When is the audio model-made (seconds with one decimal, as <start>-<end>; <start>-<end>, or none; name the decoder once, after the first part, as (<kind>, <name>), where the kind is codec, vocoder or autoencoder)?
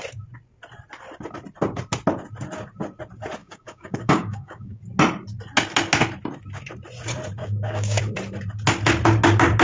3.4-4.8 (codec, DAC); 7.4-8.0